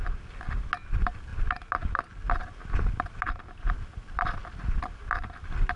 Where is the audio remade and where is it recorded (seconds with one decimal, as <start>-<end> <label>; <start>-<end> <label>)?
0.0-5.8 recorded